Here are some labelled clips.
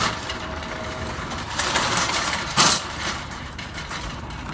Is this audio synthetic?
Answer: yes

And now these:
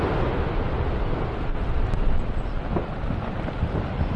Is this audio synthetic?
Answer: no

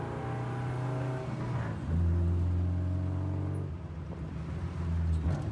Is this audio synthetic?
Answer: no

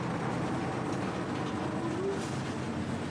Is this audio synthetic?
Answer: no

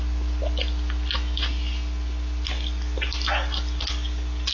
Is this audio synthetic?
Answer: no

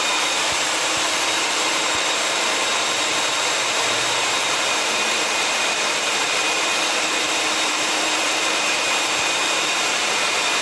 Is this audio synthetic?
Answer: yes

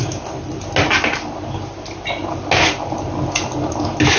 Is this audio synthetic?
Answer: no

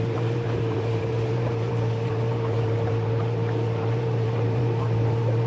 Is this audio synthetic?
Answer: yes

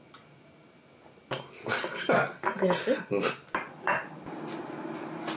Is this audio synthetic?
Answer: no